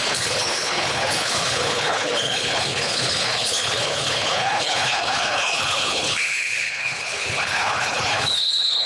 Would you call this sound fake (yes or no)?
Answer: yes